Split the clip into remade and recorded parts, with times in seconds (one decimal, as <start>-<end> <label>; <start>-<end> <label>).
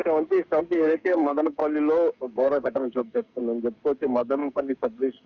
0.0-0.6 recorded; 0.6-1.6 remade; 1.6-2.1 recorded; 2.1-3.4 remade; 3.4-4.0 recorded; 4.0-5.3 remade